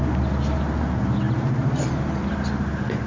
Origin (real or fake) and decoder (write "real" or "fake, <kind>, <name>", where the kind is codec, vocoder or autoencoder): real